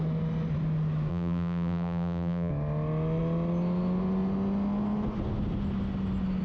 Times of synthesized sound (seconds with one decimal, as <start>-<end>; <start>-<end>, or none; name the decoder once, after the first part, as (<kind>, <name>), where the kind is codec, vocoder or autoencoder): 1.1-2.5 (vocoder, BigVGAN v2)

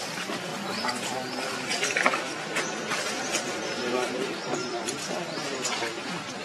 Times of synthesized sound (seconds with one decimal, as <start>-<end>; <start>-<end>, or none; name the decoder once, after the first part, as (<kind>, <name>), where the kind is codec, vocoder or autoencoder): 0.5-2.5 (vocoder, BigVGAN v2); 2.9-3.8; 4.6-5.8